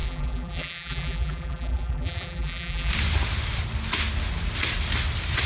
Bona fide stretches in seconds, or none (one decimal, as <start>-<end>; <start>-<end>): 2.9-5.5